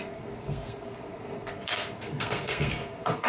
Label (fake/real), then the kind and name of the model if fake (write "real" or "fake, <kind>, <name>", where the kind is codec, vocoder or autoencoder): fake, codec, SNAC